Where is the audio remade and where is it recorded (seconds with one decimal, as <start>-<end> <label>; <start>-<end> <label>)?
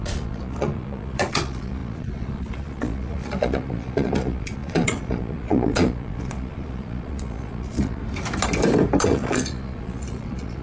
0.0-8.0 remade; 8.0-9.0 recorded; 9.0-10.6 remade